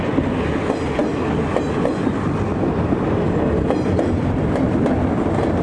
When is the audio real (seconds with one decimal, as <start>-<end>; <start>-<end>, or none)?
0.0-5.6